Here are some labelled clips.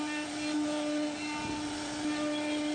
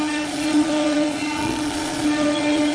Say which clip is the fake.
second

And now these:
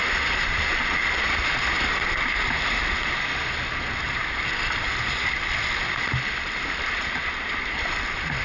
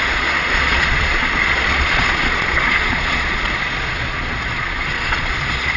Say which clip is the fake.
second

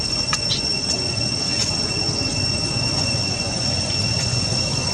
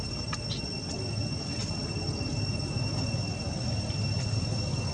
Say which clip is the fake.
first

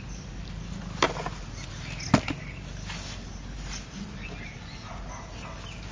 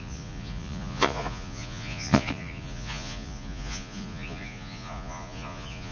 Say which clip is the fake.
second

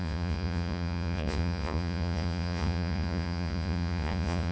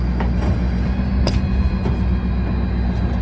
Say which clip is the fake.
first